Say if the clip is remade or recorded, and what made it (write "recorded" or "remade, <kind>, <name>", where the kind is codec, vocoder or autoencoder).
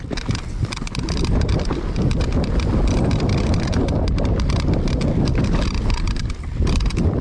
recorded